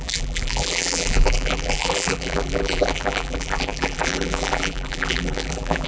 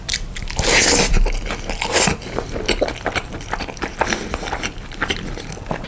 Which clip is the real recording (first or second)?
second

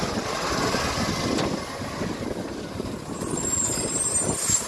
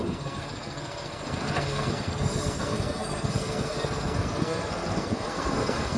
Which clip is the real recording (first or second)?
first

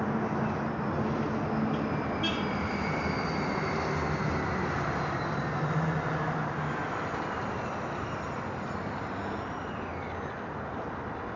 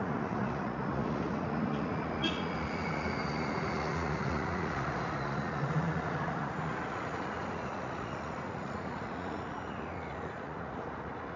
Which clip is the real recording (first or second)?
first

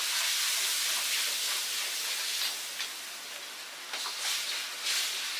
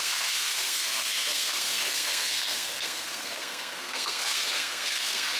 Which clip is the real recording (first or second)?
first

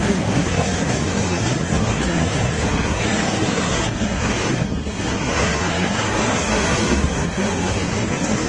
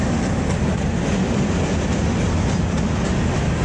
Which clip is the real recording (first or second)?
second